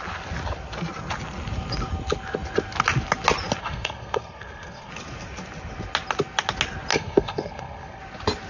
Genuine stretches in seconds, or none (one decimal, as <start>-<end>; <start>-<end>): 0.0-3.6; 4.9-6.9; 8.0-8.5